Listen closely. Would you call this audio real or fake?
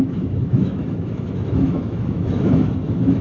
fake